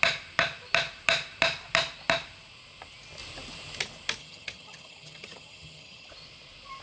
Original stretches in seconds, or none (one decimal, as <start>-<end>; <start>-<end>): 0.0-4.2; 6.1-6.8